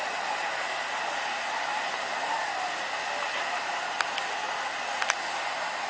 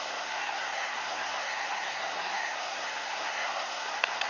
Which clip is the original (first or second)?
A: first